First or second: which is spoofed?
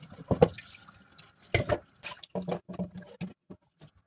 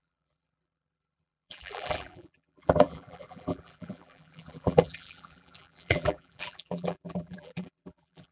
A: second